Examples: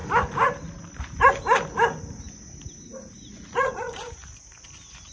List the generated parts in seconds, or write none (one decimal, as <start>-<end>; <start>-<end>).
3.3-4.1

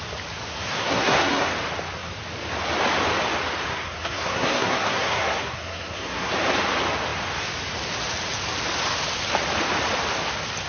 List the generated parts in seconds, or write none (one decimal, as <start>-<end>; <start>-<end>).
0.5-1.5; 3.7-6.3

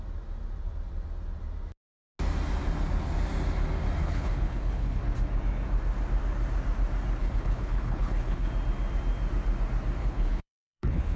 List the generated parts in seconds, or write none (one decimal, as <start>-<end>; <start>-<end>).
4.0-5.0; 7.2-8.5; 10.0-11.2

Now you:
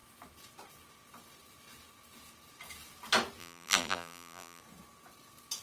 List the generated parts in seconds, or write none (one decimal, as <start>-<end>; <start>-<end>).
3.4-4.6

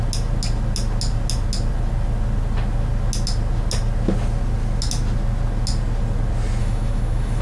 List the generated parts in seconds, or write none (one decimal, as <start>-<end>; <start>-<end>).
6.6-7.4

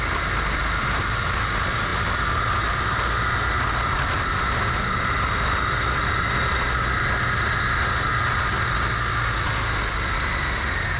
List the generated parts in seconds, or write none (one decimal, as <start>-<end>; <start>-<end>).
none

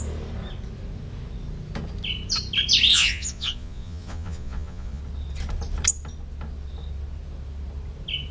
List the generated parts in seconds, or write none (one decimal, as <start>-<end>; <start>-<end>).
2.9-5.0